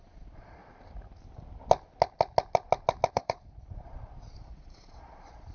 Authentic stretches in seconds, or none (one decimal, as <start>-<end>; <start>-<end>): 0.6-3.1